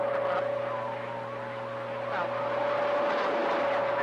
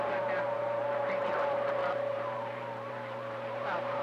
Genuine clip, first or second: first